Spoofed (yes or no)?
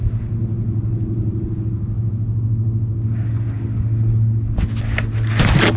no